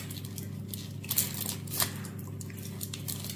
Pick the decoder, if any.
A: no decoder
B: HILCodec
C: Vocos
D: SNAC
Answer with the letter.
A